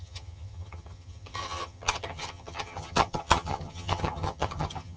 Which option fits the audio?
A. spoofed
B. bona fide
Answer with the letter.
A